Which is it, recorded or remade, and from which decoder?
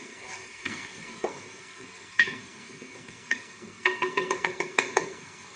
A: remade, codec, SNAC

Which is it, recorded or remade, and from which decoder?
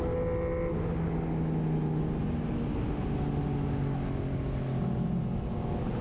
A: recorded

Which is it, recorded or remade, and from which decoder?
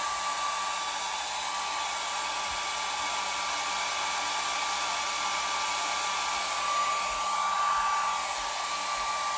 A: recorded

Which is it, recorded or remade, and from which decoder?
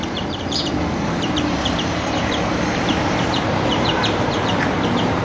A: remade, vocoder, BigVGAN v2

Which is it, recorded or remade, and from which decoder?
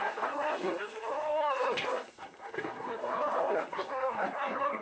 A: remade, codec, SNAC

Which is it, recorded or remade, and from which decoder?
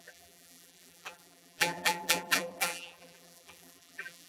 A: remade, vocoder, BigVGAN v2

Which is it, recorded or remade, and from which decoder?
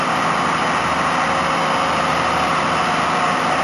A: recorded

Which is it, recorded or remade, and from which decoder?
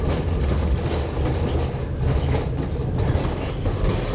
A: recorded